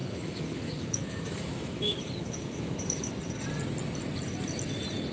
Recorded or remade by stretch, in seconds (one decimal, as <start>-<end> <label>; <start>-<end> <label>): 0.0-3.1 remade; 3.1-5.1 recorded